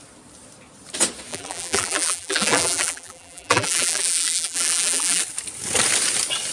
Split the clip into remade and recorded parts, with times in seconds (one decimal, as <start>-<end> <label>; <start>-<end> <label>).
0.0-1.3 recorded; 1.3-5.2 remade; 5.2-6.5 recorded